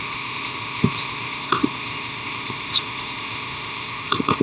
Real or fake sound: fake